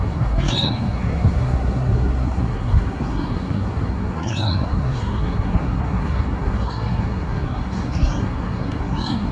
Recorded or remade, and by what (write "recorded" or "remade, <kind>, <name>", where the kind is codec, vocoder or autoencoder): remade, codec, SNAC